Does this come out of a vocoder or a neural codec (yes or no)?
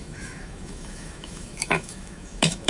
yes